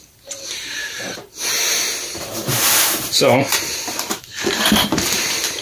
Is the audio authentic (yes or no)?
no